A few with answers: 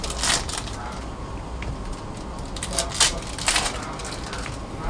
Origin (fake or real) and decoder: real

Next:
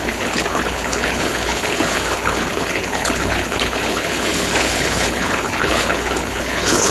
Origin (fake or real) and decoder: fake, codec, HILCodec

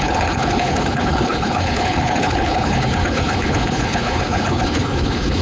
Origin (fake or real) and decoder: fake, codec, HILCodec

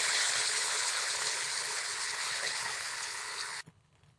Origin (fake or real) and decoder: fake, codec, HILCodec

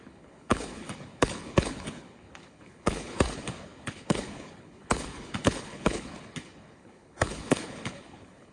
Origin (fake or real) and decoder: fake, codec, HILCodec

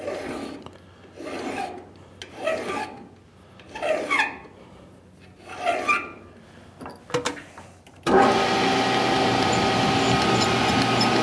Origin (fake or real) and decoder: real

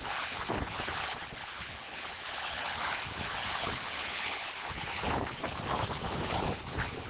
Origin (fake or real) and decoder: fake, codec, HILCodec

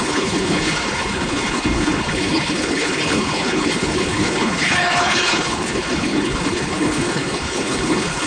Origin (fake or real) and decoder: fake, codec, HILCodec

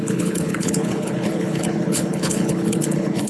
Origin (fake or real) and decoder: fake, codec, HILCodec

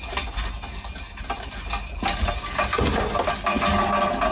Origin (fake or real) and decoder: real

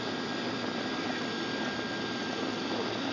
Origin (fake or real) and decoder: real